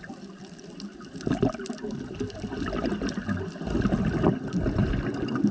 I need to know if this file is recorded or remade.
recorded